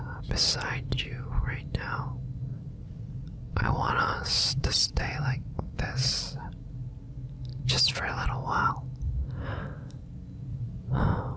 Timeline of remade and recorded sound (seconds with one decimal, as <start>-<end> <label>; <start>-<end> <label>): 0.0-2.5 recorded; 2.5-6.1 remade; 6.1-10.5 recorded; 10.5-11.0 remade; 11.0-11.4 recorded